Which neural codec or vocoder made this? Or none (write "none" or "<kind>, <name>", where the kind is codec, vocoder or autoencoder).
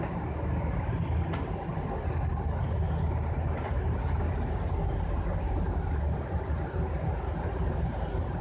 none